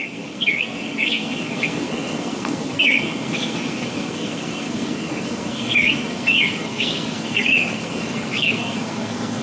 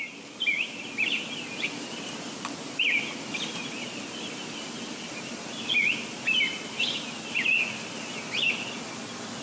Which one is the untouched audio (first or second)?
second